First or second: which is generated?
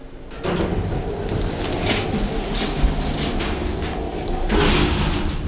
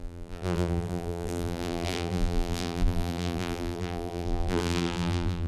second